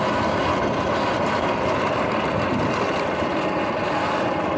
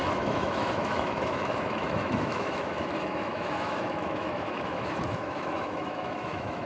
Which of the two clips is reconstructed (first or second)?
second